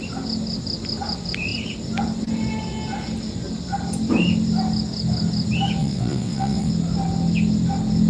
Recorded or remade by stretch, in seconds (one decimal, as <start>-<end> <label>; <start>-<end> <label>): 0.0-5.8 recorded; 5.8-6.7 remade; 6.7-8.1 recorded